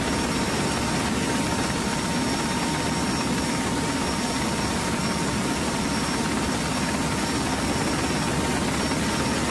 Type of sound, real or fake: real